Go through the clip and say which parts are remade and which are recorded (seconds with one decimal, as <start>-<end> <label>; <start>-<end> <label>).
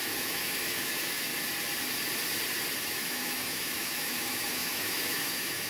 0.0-1.3 remade; 1.3-2.8 recorded; 2.8-5.7 remade